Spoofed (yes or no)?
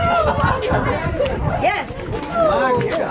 no